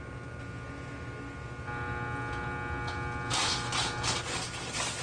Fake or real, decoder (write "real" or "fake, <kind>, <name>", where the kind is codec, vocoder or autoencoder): real